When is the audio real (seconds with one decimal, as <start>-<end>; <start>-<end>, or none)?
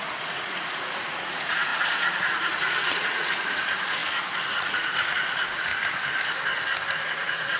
4.0-4.5; 5.7-7.0